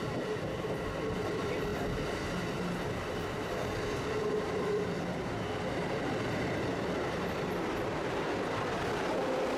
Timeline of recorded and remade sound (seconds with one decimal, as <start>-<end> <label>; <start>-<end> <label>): 0.0-1.7 remade; 1.7-2.8 recorded; 2.8-9.6 remade